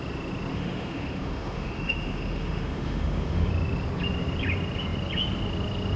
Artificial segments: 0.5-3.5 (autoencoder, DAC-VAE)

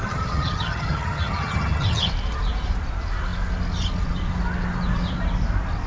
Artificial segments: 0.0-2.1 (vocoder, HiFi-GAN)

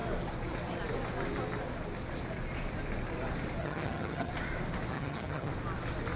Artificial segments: 3.6-4.3 (vocoder, HiFi-GAN); 4.9-5.5